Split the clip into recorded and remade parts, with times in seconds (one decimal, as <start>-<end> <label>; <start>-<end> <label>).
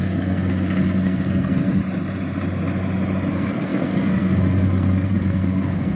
0.0-1.8 remade; 1.8-3.3 recorded; 3.3-6.0 remade